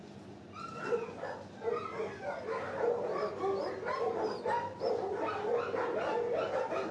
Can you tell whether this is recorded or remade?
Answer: recorded